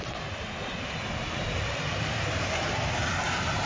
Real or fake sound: fake